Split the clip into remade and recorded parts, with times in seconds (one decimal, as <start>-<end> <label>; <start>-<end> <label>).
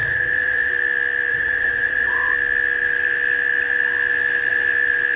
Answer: 0.0-0.7 remade; 0.7-1.3 recorded; 1.3-2.3 remade; 2.3-5.2 recorded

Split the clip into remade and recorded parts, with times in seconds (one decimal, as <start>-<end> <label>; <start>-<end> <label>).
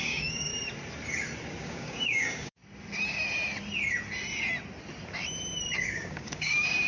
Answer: 0.0-0.5 remade; 0.5-1.6 recorded; 1.6-2.6 remade; 2.6-5.8 recorded; 5.8-6.9 remade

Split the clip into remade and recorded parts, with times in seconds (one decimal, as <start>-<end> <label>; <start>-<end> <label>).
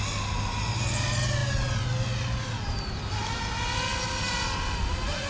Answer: 0.0-5.3 recorded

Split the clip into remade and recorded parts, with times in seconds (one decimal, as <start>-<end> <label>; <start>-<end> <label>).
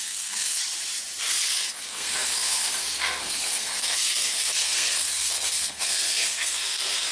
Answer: 0.0-0.6 remade; 0.6-1.2 recorded; 1.2-7.1 remade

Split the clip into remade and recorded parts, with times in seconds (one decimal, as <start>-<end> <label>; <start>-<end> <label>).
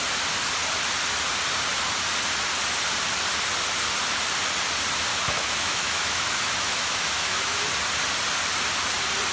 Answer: 0.0-5.1 recorded; 5.1-7.6 remade; 7.6-9.3 recorded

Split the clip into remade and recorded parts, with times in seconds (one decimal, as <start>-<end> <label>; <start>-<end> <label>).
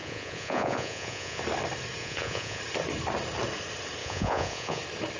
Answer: 0.0-1.4 remade; 1.4-2.0 recorded; 2.0-2.6 remade; 2.6-4.0 recorded; 4.0-4.8 remade; 4.8-5.2 recorded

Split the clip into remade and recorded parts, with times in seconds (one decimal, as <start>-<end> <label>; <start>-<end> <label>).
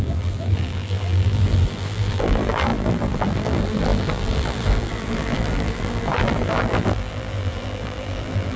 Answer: 0.0-8.6 remade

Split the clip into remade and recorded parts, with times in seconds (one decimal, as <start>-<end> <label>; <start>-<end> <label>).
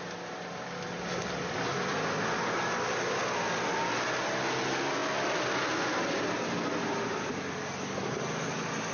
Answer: 0.0-8.9 recorded